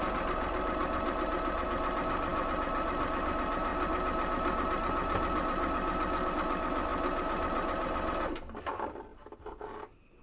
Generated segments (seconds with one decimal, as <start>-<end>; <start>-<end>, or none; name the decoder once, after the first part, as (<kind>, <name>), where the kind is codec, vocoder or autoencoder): none

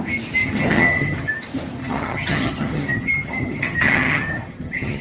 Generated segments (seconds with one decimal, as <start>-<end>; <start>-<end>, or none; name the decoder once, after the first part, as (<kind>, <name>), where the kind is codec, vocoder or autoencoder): 0.4-1.3 (vocoder, HiFi-GAN); 1.8-5.0

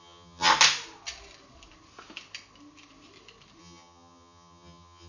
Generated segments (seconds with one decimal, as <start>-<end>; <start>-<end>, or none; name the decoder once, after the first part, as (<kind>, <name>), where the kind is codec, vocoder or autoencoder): 0.0-0.5 (vocoder, HiFi-GAN); 3.6-5.1

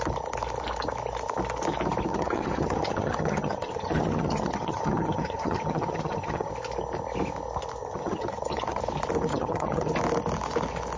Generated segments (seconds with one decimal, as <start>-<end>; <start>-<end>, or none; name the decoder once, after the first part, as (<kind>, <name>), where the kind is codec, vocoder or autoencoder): 2.1-6.5 (vocoder, HiFi-GAN); 7.8-8.8; 9.3-9.9

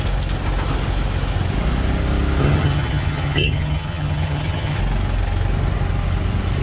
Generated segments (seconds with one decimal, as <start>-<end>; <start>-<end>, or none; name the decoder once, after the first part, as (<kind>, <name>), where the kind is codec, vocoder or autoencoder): 2.4-4.8 (vocoder, HiFi-GAN)

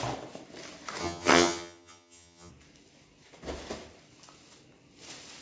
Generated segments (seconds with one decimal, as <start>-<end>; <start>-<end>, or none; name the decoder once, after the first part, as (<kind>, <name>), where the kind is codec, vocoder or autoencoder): 1.0-2.5 (vocoder, HiFi-GAN)

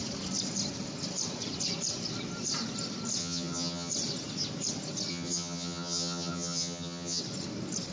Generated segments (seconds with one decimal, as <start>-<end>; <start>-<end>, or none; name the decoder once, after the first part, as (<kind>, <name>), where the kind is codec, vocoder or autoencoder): 3.2-3.9 (vocoder, HiFi-GAN); 5.1-7.2